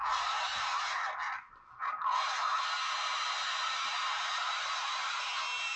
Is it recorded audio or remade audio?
recorded